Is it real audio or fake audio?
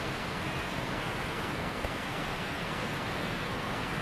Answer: fake